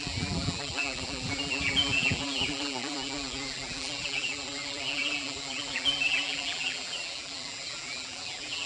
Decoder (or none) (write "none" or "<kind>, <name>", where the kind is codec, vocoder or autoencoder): vocoder, BigVGAN v2